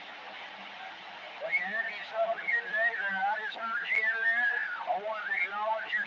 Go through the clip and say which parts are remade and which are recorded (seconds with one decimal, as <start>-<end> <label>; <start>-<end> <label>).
0.0-6.1 recorded